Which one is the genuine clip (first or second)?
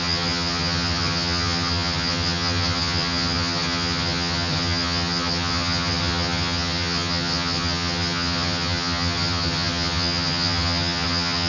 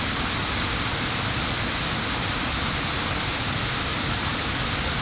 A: second